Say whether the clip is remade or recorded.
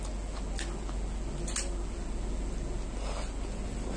recorded